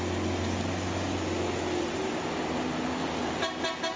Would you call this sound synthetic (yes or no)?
no